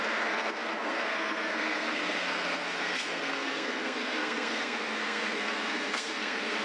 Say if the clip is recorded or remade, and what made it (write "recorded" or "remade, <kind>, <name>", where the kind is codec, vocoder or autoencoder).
remade, codec, SNAC